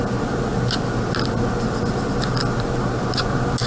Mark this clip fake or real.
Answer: real